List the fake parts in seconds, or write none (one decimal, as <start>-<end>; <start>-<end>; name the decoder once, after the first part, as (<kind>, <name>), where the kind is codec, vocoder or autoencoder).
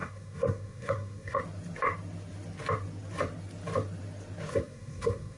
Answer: 0.0-1.4 (codec, SNAC); 4.5-5.4